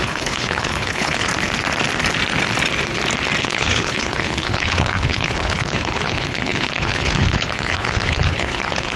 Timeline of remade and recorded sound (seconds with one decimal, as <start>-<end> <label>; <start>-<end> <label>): 0.0-1.3 remade; 1.3-3.4 recorded; 3.4-9.0 remade